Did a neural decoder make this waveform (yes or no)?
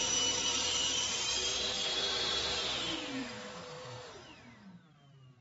yes